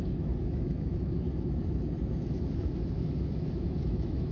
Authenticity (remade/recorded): remade